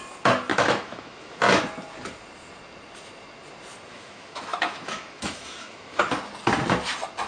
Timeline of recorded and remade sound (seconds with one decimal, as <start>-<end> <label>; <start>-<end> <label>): 0.0-0.5 recorded; 0.5-1.4 remade; 1.4-3.9 recorded; 3.9-6.0 remade; 6.0-7.3 recorded

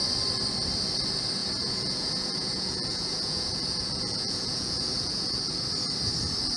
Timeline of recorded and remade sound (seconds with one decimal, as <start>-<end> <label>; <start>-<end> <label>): 0.0-1.4 recorded; 1.4-5.4 remade; 5.4-6.6 recorded

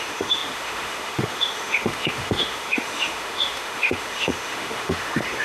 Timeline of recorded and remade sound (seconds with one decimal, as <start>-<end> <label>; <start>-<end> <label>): 0.0-5.4 remade

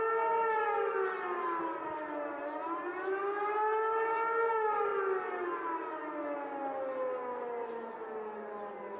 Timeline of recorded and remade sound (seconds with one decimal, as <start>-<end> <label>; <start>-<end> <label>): 0.0-9.0 recorded